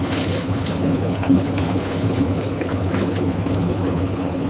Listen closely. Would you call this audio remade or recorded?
remade